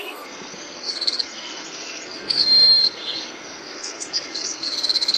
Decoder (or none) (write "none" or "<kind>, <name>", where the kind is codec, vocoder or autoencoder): codec, SNAC